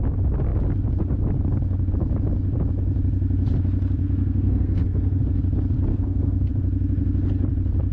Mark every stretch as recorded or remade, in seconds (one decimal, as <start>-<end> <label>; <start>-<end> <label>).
0.0-4.0 recorded; 4.0-5.2 remade; 5.2-5.9 recorded; 5.9-6.5 remade; 6.5-7.9 recorded